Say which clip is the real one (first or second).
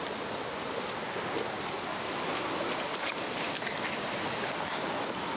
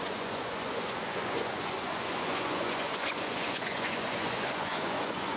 first